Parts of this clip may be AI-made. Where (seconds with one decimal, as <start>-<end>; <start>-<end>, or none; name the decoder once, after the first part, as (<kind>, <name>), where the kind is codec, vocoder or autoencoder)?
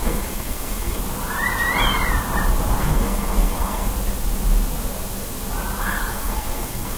0.0-1.0 (codec, SNAC); 2.8-3.9; 5.8-7.0